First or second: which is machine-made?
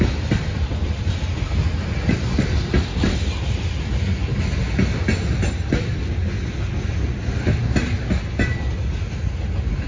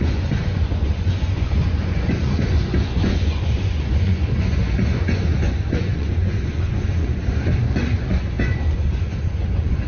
second